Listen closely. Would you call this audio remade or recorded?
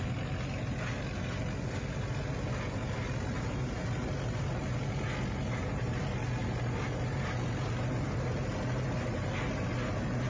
recorded